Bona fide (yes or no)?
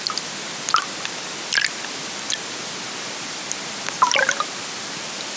yes